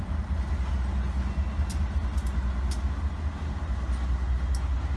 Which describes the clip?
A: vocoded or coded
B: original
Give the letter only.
B